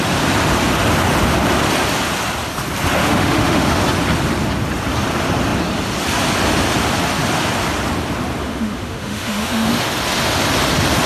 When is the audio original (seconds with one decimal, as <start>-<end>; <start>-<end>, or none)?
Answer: 0.0-3.0; 3.8-8.4; 9.7-11.1